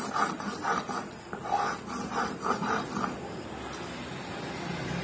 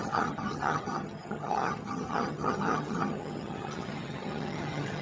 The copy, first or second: second